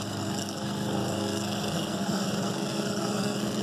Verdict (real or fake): fake